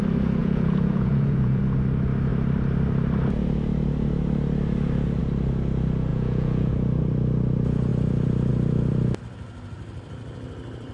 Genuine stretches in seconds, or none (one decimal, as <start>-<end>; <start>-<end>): 0.0-0.4; 1.6-6.1; 6.7-10.9